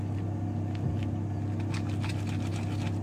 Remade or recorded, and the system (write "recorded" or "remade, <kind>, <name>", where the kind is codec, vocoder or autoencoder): recorded